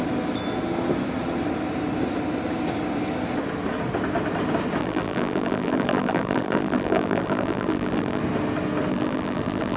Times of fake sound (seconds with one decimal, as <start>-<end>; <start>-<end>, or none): 4.8-8.2; 8.9-9.8